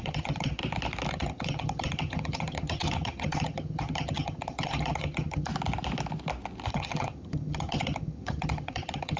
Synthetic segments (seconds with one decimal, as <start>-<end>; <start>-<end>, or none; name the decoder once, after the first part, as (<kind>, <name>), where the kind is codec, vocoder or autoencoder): 0.0-0.6 (vocoder, HiFi-GAN); 1.1-5.5; 6.7-9.2